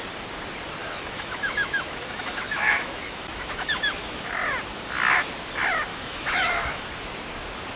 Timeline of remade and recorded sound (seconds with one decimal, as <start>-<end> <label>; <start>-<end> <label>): 0.0-0.8 recorded; 0.8-4.3 remade; 4.3-5.9 recorded; 5.9-6.9 remade; 6.9-7.8 recorded